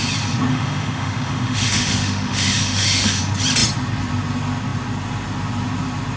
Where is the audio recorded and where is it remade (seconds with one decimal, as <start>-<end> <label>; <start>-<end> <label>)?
0.0-0.5 recorded; 0.5-3.2 remade; 3.2-6.2 recorded